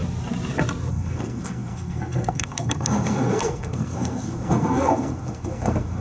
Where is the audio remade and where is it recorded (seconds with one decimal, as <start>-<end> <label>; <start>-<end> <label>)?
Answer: 0.0-0.9 recorded; 0.9-6.0 remade

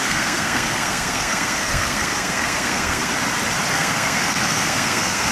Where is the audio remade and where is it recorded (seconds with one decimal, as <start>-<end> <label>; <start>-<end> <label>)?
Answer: 0.0-3.1 remade; 3.1-3.7 recorded; 3.7-5.3 remade

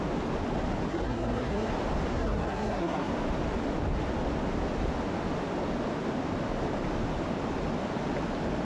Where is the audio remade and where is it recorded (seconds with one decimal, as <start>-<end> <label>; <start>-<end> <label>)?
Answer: 0.0-0.9 recorded; 0.9-1.7 remade; 1.7-2.1 recorded; 2.1-3.1 remade; 3.1-8.6 recorded

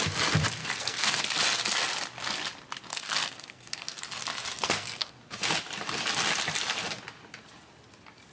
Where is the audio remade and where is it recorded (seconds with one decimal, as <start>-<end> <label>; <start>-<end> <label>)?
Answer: 0.0-0.6 recorded; 0.6-1.2 remade; 1.2-2.9 recorded; 2.9-4.0 remade; 4.0-4.5 recorded; 4.5-5.1 remade; 5.1-8.3 recorded